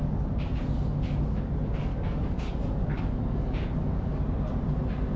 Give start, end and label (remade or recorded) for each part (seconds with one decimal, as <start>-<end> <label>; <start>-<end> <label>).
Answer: 0.0-1.9 recorded; 1.9-4.2 remade; 4.2-5.2 recorded